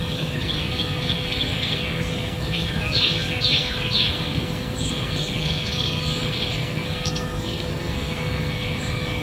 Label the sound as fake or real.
fake